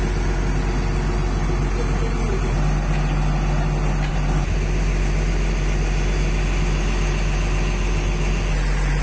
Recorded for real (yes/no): yes